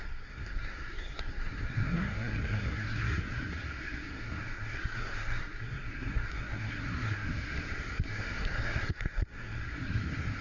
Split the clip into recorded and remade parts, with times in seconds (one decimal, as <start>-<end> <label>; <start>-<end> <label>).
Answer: 0.0-10.4 remade